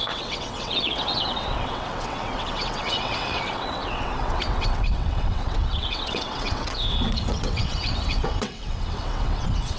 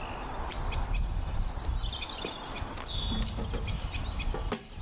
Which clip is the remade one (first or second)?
first